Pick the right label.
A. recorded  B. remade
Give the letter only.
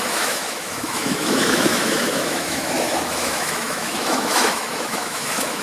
B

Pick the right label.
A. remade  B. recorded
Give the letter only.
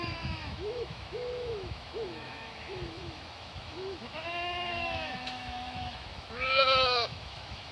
A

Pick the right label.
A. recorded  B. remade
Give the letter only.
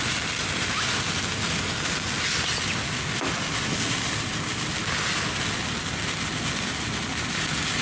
A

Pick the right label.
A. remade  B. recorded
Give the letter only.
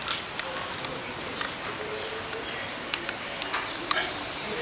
B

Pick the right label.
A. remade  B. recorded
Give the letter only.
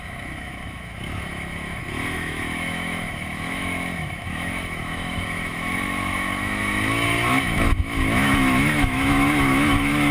A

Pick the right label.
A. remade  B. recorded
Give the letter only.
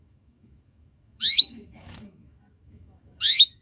A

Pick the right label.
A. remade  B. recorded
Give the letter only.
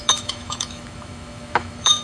A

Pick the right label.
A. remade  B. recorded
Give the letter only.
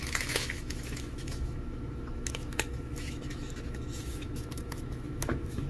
A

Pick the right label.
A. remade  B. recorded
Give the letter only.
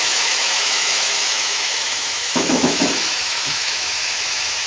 A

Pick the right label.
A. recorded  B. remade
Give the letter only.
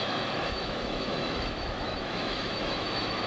B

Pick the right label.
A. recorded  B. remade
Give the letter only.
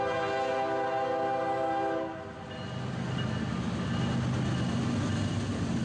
A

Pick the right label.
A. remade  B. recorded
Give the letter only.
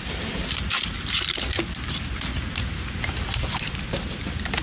B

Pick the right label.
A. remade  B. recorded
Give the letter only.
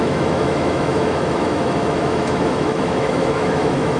A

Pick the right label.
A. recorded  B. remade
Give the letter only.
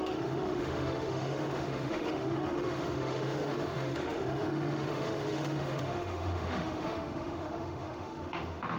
B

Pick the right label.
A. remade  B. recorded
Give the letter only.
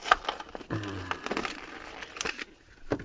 B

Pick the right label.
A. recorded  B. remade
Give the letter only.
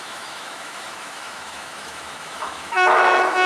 B